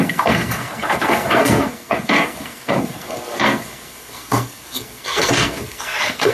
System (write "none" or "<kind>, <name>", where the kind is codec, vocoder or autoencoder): codec, SNAC